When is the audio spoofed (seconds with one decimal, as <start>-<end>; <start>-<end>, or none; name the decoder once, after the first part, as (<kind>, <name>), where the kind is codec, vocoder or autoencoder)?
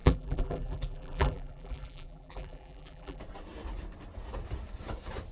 0.0-3.2 (vocoder, BigVGAN v2)